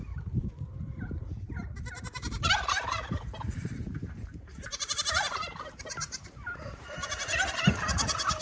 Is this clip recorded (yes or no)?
no